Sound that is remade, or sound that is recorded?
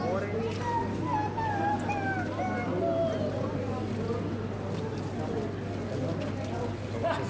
recorded